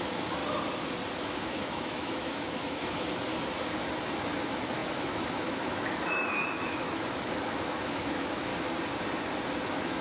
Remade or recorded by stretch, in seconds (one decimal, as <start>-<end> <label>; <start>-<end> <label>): 0.0-0.4 remade; 0.4-1.2 recorded; 1.2-3.3 remade; 3.3-3.8 recorded; 3.8-8.5 remade; 8.5-9.6 recorded; 9.6-10.0 remade